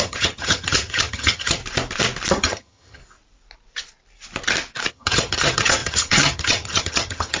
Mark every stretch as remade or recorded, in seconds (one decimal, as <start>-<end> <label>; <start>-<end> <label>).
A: 0.0-1.6 remade; 1.6-2.3 recorded; 2.3-3.0 remade; 3.0-4.9 recorded; 4.9-7.4 remade